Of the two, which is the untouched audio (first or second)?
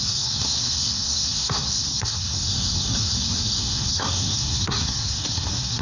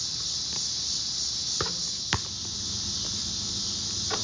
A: second